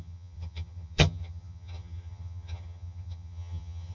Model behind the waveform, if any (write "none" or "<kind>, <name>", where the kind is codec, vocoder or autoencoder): vocoder, HiFi-GAN